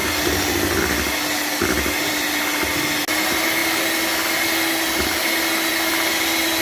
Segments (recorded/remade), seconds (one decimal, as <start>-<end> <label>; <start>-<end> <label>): 0.0-6.6 recorded